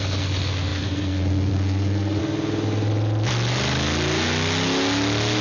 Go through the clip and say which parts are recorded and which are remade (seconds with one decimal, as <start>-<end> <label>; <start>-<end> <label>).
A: 0.0-2.2 remade; 2.2-5.4 recorded